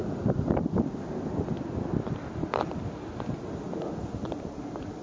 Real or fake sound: real